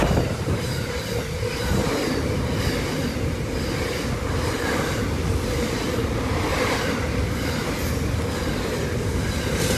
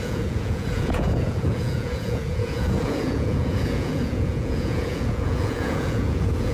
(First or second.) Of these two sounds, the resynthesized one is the second